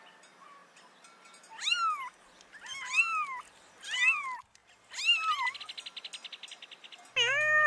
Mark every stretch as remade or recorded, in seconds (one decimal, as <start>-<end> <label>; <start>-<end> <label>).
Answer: 0.0-7.7 recorded